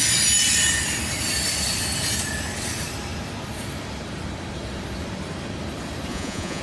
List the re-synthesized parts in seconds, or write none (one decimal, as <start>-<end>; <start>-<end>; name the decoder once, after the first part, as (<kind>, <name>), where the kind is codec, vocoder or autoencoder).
6.1-6.6 (vocoder, Vocos)